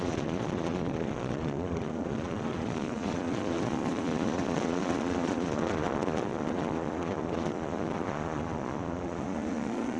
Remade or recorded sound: remade